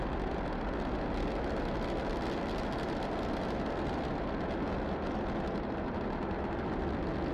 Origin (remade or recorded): recorded